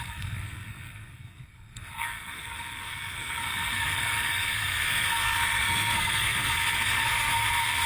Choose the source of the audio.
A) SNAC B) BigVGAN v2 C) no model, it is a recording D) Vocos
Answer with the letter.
A